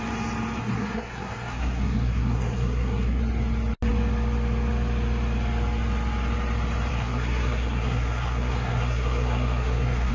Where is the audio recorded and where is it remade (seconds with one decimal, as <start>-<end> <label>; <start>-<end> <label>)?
0.0-0.6 recorded; 0.6-3.2 remade; 3.2-6.9 recorded; 6.9-10.1 remade